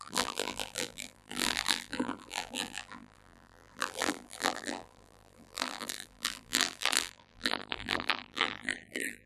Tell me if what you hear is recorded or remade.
remade